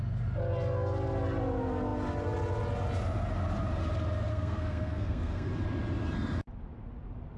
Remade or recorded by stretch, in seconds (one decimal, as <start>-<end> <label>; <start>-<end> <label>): 0.0-4.3 recorded; 4.3-5.5 remade; 5.5-7.4 recorded